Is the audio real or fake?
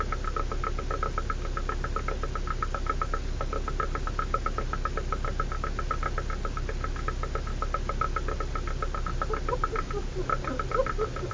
real